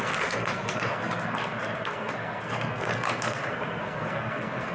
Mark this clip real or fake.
fake